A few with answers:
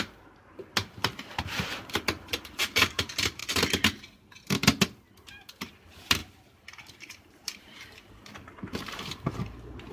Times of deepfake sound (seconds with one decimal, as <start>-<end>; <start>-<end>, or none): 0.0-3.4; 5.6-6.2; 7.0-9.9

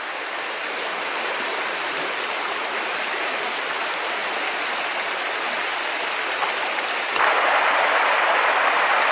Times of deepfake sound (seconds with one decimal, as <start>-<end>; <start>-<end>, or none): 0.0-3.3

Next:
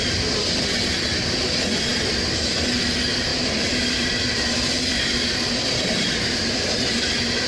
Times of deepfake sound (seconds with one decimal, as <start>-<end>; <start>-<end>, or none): 3.3-7.1